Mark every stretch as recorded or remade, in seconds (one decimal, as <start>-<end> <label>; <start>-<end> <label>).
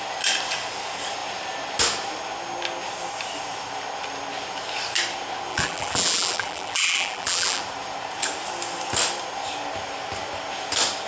0.0-5.5 recorded; 5.5-7.6 remade; 7.6-11.1 recorded